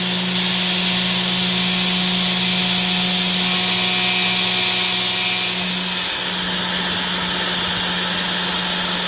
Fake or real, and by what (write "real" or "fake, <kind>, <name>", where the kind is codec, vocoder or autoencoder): real